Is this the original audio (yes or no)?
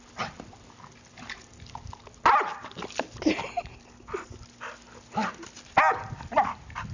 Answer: yes